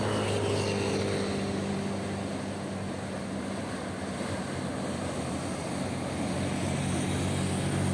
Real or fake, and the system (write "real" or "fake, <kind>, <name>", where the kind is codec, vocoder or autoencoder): real